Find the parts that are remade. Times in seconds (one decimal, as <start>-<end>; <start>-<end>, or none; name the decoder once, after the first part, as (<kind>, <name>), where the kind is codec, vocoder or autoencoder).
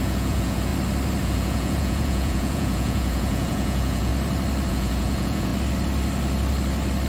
0.0-0.7 (vocoder, Vocos); 1.2-4.1; 4.7-5.5